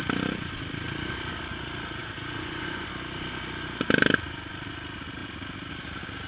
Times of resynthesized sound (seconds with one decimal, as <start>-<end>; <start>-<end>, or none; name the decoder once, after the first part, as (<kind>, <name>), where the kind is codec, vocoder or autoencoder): 2.0-2.9 (vocoder, Vocos)